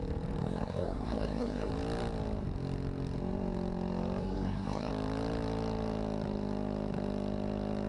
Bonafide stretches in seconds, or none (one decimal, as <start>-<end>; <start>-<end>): 0.0-0.4; 1.7-4.2; 4.9-7.9